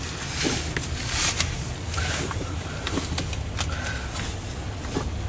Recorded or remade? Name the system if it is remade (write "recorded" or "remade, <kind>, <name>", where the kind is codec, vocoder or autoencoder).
recorded